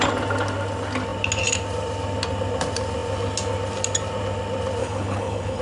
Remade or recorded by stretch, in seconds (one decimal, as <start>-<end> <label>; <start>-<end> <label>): 0.0-4.8 recorded; 4.8-5.6 remade